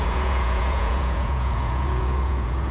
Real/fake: fake